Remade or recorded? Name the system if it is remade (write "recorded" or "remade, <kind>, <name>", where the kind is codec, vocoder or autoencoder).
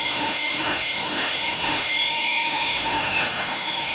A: remade, autoencoder, DAC-VAE